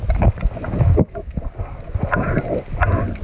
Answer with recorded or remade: recorded